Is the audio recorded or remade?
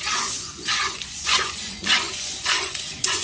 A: remade